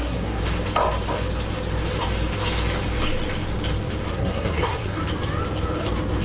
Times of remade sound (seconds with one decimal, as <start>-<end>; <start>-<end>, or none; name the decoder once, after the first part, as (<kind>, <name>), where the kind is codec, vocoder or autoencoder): 0.0-0.4 (codec, SNAC); 4.1-5.0